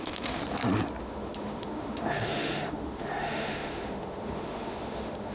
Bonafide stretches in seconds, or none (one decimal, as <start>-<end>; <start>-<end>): 0.4-1.0